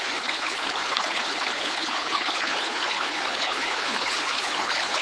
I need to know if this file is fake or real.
fake